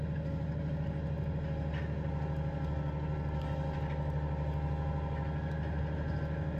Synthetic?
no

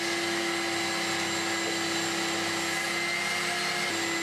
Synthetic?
no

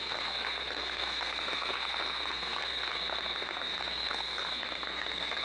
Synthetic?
yes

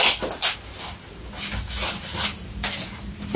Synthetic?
no